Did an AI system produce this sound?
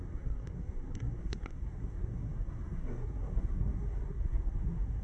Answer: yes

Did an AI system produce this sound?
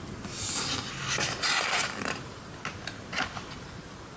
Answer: no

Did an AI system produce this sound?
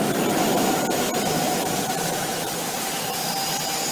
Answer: yes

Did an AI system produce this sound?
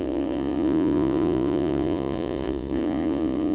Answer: yes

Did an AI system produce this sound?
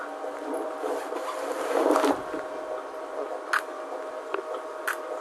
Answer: no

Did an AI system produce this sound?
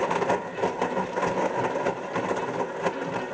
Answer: no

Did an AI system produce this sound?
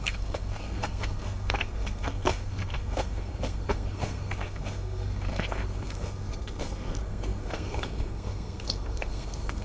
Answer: yes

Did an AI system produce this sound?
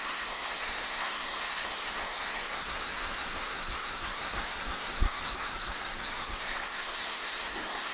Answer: yes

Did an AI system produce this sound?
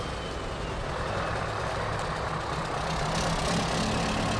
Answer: no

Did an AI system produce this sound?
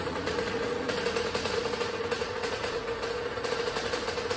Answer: yes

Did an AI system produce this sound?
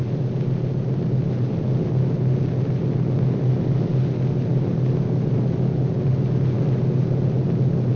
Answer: no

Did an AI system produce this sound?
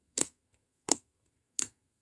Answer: yes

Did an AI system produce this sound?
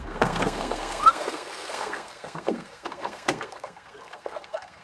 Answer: yes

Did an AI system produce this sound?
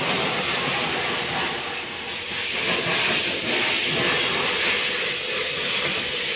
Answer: no